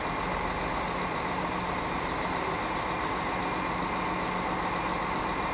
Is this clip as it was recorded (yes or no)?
yes